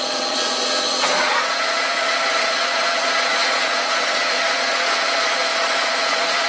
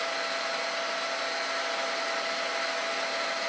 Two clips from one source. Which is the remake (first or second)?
first